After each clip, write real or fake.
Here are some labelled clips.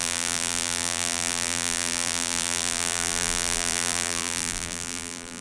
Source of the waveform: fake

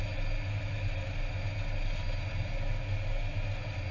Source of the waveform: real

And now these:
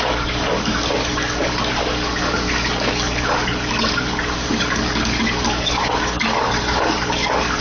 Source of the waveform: fake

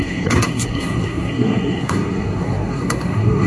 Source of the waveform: fake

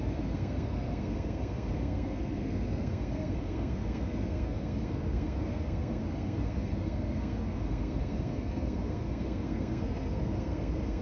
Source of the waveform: fake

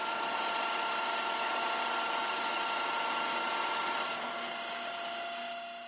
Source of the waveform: real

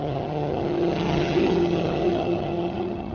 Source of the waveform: fake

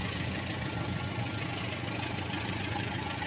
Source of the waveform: fake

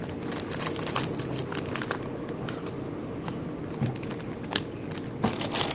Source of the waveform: real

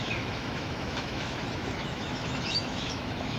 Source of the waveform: fake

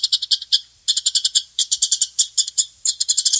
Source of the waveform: fake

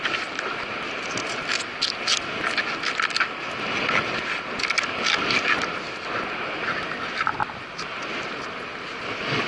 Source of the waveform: real